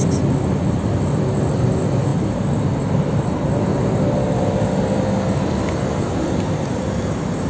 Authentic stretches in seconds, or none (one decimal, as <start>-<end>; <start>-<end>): 0.0-7.5